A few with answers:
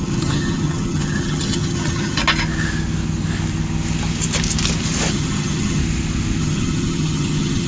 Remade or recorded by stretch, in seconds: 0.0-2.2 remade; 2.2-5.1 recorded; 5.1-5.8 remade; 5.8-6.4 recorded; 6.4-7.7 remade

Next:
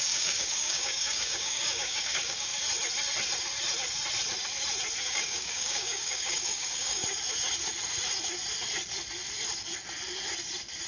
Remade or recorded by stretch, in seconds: 0.0-2.5 remade; 2.5-5.0 recorded; 5.0-7.0 remade; 7.0-10.9 recorded

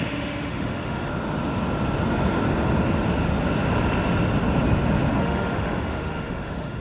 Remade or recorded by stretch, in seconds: 0.0-1.1 remade; 1.1-5.2 recorded; 5.2-6.8 remade

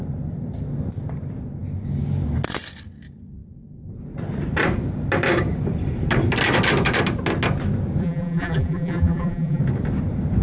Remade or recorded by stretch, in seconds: 0.0-8.0 recorded; 8.0-9.6 remade; 9.6-10.4 recorded

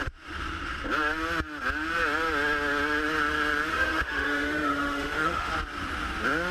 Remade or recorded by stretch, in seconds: 0.0-3.7 recorded; 3.7-5.5 remade; 5.5-6.5 recorded

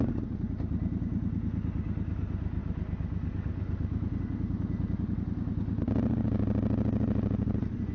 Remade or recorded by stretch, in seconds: 0.0-7.9 recorded

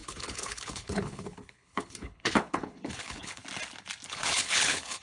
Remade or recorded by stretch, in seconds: 0.0-3.4 remade; 3.4-4.1 recorded; 4.1-5.0 remade

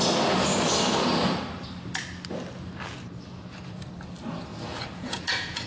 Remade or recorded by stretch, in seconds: 0.0-4.5 recorded; 4.5-5.7 remade